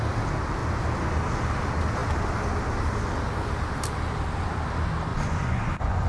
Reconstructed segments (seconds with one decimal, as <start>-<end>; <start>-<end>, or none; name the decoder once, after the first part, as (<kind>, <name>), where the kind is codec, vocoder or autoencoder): 5.1-6.1 (vocoder, Vocos)